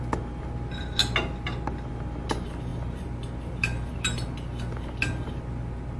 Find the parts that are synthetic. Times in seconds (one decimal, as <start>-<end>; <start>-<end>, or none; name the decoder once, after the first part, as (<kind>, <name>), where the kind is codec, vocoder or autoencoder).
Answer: none